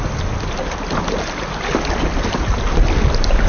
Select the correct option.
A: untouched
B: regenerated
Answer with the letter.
A